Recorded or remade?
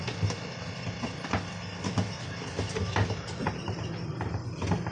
recorded